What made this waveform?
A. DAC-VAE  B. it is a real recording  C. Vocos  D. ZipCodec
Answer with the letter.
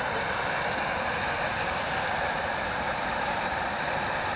B